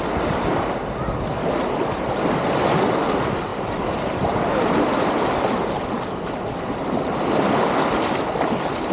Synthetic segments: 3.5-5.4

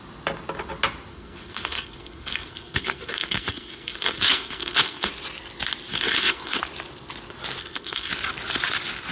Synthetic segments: 1.1-5.1; 5.9-6.6; 7.6-8.1

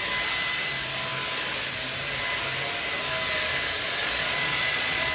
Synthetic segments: 4.0-5.1

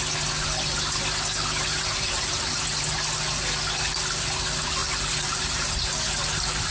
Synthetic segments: 1.9-2.5; 4.8-5.7